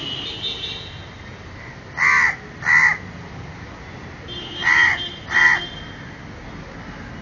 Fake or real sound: real